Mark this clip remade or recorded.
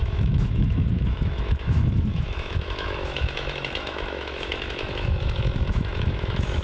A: remade